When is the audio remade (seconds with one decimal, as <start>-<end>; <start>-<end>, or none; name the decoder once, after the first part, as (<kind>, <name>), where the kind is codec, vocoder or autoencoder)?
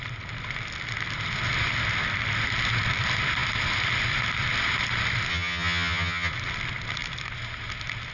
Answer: 5.3-6.3 (vocoder, HiFi-GAN)